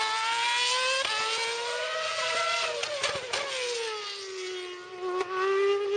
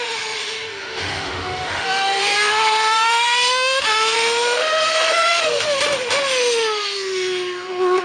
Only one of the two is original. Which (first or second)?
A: first